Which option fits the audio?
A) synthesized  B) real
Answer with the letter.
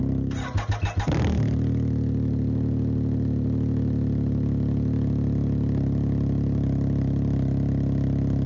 B